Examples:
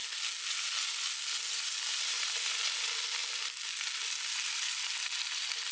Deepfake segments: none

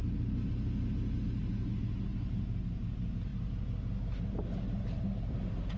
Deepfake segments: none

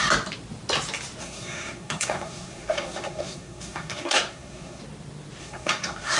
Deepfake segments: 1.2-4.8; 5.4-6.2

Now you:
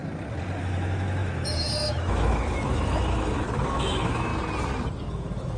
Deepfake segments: 0.6-4.3; 5.1-5.6